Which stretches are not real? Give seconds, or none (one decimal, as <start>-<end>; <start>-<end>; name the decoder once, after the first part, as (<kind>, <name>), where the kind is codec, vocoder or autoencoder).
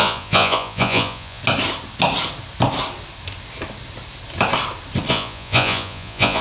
0.0-1.4 (vocoder, Vocos); 5.1-6.4